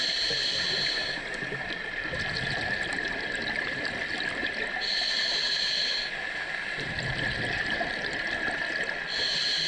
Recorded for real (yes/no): yes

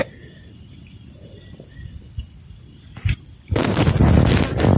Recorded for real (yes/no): yes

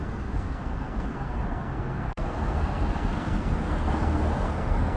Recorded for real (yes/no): no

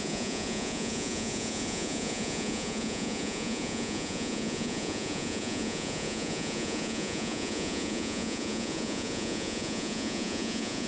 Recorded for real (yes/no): no